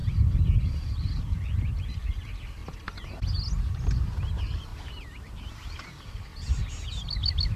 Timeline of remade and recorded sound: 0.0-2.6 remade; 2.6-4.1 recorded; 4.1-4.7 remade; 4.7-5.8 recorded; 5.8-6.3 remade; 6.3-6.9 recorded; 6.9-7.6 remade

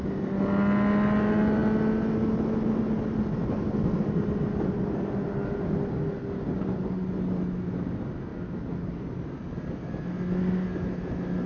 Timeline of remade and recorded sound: 0.0-8.3 recorded; 8.3-9.1 remade; 9.1-11.5 recorded

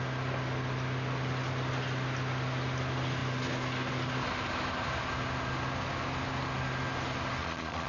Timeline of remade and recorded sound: 0.0-7.4 recorded; 7.4-7.9 remade

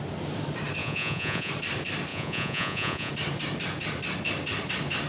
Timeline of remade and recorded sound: 0.0-0.8 recorded; 0.8-1.5 remade; 1.5-2.1 recorded; 2.1-3.1 remade; 3.1-5.1 recorded